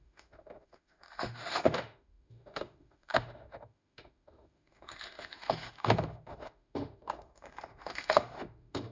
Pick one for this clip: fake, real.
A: fake